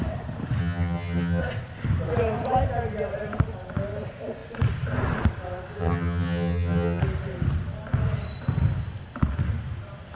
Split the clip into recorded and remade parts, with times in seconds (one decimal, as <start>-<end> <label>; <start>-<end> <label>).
0.0-0.6 recorded; 0.6-1.4 remade; 1.4-5.8 recorded; 5.8-7.0 remade; 7.0-10.2 recorded